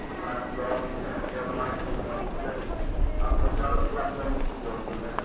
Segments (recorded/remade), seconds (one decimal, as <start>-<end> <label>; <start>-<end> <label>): 0.0-0.9 recorded; 0.9-2.2 remade; 2.2-5.2 recorded

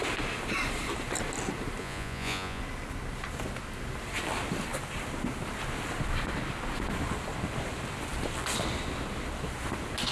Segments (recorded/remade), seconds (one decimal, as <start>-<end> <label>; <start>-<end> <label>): 0.0-1.8 recorded; 1.8-2.6 remade; 2.6-10.1 recorded

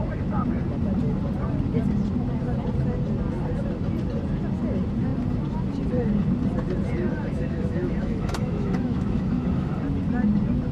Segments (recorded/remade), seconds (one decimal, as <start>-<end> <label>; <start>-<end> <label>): 0.0-7.1 recorded; 7.1-9.7 remade; 9.7-10.7 recorded

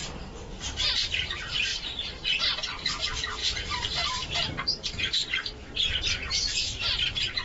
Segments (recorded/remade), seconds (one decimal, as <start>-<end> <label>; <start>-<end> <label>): 0.0-0.9 recorded; 0.9-7.4 remade

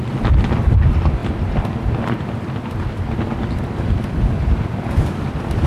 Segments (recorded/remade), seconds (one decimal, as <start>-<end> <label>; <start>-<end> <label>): 0.0-5.7 recorded

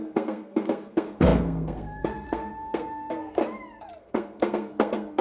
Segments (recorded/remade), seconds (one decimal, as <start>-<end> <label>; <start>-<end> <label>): 0.0-3.4 remade; 3.4-4.0 recorded; 4.0-5.2 remade